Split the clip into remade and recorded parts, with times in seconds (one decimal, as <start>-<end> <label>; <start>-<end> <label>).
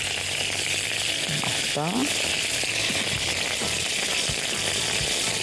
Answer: 0.0-5.4 recorded